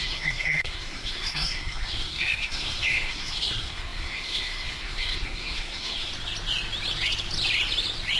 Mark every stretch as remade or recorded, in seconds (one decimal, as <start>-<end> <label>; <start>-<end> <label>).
0.0-6.1 remade; 6.1-8.2 recorded